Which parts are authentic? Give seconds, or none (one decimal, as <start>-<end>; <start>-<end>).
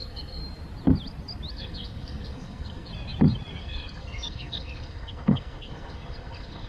0.4-1.5; 2.9-3.6